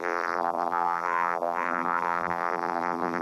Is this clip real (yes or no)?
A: no